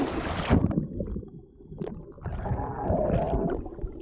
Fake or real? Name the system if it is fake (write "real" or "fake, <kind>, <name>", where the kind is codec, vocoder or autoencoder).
real